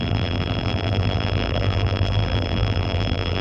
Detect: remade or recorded remade